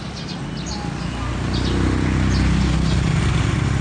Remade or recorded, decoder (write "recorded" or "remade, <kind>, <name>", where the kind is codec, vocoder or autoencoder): recorded